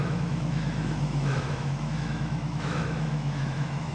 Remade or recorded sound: remade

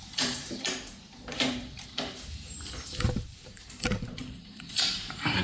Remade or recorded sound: remade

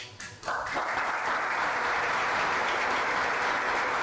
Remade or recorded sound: remade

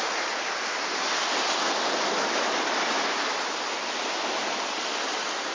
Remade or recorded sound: recorded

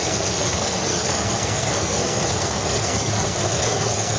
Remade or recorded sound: remade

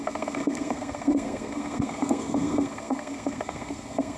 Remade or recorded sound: remade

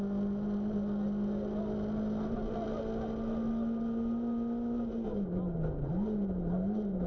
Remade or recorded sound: recorded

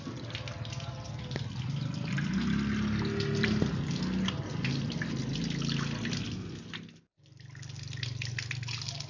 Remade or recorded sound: recorded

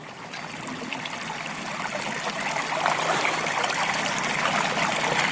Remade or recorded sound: recorded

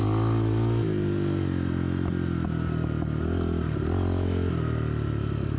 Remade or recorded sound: recorded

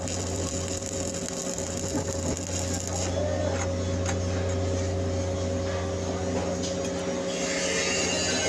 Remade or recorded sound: recorded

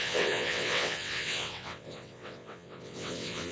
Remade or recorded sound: remade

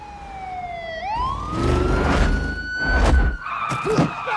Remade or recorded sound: recorded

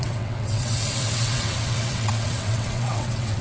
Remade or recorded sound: remade